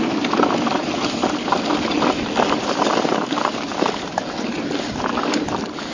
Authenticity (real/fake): real